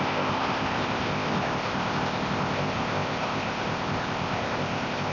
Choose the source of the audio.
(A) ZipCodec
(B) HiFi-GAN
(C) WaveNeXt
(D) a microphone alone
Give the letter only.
A